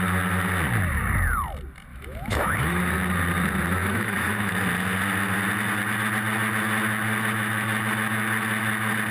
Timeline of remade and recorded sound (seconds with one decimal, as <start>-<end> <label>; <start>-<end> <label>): 0.0-1.9 recorded; 1.9-2.8 remade; 2.8-3.8 recorded; 3.8-4.5 remade; 4.5-9.1 recorded